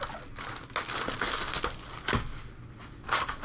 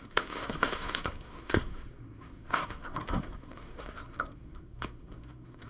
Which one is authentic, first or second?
first